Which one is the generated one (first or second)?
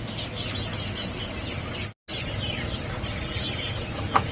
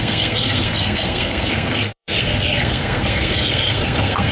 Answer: second